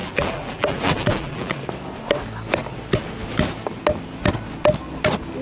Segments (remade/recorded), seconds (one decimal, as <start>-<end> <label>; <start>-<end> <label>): 0.0-1.6 remade; 1.6-5.4 recorded